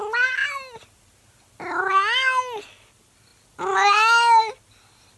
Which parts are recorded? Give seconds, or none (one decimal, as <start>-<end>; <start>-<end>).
0.0-5.2